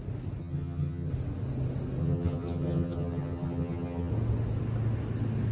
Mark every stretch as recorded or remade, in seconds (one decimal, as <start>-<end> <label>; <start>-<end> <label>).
0.0-0.4 recorded; 0.4-1.1 remade; 1.1-2.0 recorded; 2.0-4.1 remade; 4.1-5.5 recorded